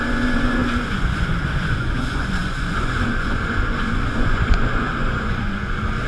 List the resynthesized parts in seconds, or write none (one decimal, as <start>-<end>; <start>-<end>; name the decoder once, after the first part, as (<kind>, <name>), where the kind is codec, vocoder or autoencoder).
0.0-6.1 (vocoder, Vocos)